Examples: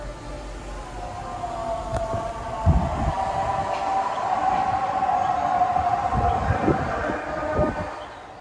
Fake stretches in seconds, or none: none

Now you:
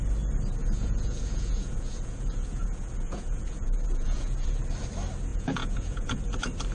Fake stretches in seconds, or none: 0.6-4.6; 5.3-6.2

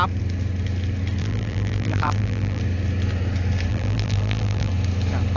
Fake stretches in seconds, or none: 1.2-2.6; 3.7-4.7

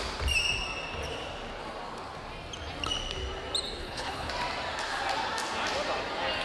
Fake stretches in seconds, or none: 3.8-4.3

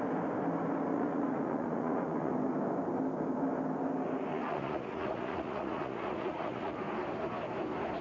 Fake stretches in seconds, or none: 0.9-2.3; 4.3-6.8

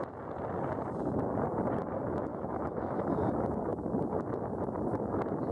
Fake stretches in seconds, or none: 2.3-3.2

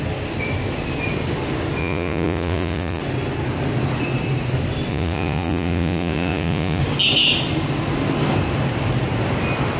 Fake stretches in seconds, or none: 1.8-3.0; 4.9-6.8